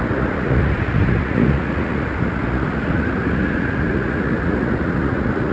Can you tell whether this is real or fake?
fake